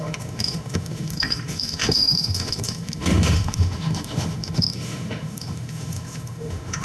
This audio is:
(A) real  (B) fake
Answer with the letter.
B